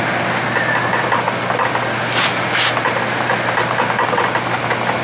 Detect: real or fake real